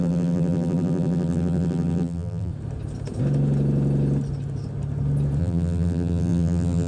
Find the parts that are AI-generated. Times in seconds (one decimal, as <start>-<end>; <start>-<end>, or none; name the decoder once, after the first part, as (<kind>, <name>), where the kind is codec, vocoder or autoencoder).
0.0-2.5 (vocoder, BigVGAN v2); 5.4-6.9